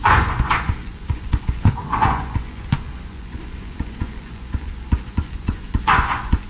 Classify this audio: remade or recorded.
remade